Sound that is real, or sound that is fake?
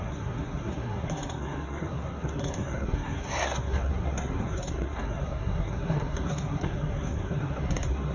fake